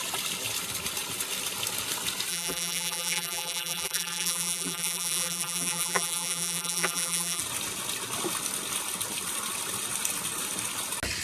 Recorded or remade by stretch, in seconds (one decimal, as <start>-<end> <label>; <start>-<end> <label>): 0.0-2.3 recorded; 2.3-7.4 remade; 7.4-11.2 recorded